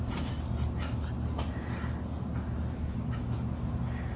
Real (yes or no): yes